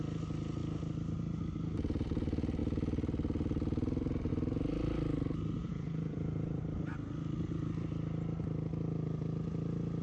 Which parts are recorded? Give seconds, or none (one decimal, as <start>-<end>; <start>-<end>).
0.0-5.6; 6.6-10.0